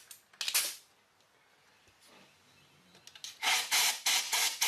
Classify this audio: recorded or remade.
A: recorded